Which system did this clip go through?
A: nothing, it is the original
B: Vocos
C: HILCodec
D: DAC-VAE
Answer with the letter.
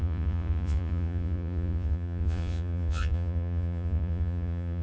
B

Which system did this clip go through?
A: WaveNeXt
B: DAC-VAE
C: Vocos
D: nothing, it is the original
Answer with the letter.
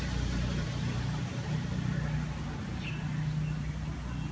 D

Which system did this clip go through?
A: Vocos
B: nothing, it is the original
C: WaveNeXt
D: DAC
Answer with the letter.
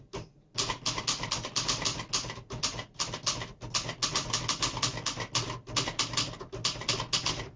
B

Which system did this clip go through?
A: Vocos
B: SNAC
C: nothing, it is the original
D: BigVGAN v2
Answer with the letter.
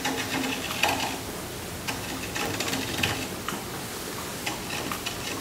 C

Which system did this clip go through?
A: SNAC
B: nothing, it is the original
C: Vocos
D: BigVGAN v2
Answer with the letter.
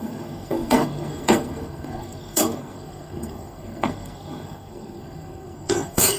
A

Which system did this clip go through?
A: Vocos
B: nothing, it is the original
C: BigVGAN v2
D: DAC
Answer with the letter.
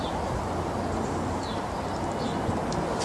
B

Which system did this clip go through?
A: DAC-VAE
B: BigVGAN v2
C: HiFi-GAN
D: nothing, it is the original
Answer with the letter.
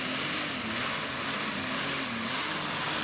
D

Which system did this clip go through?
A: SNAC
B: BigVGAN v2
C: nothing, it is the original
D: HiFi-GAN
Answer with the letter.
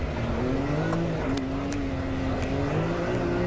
C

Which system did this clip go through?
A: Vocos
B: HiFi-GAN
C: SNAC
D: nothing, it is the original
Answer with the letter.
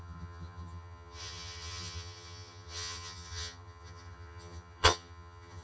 B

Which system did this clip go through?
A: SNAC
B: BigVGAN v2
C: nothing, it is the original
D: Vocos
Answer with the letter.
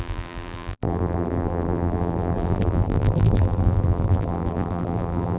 B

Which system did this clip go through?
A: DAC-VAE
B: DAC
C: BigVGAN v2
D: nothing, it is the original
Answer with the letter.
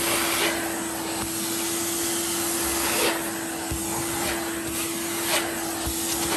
D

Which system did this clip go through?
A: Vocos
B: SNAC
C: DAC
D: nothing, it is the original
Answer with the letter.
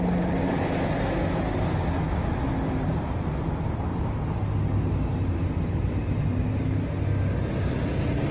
D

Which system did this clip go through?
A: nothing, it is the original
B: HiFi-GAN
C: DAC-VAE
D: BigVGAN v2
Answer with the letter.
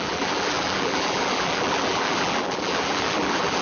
D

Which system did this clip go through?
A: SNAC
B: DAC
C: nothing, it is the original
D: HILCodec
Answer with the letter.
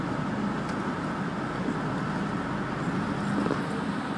C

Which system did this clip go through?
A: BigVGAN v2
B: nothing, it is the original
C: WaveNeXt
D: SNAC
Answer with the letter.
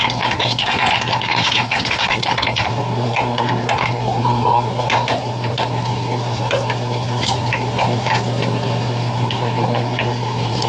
D